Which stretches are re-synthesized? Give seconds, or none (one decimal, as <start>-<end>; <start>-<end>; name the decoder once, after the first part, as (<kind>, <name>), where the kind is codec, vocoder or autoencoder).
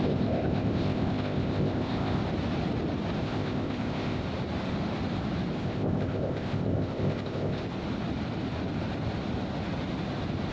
0.0-2.2 (codec, ZipCodec); 3.2-4.2; 5.6-7.6